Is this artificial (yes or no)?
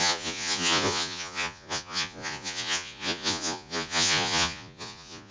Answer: yes